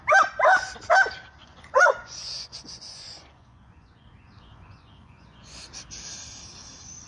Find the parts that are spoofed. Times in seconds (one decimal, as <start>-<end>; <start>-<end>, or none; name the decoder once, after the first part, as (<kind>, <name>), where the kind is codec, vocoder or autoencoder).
1.4-5.7 (vocoder, Vocos)